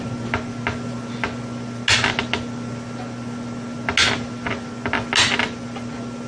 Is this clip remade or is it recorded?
recorded